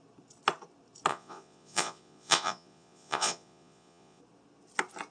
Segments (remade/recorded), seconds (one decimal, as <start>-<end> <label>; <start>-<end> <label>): 0.0-1.1 recorded; 1.1-4.2 remade; 4.2-5.1 recorded